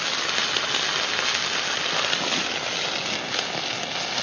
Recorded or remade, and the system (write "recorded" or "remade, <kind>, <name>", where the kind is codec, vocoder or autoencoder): recorded